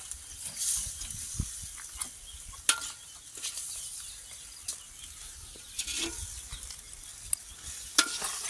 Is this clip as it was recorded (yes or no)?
yes